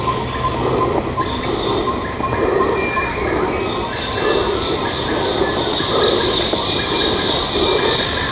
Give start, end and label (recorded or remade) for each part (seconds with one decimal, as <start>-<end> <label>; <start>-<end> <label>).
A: 0.0-8.3 recorded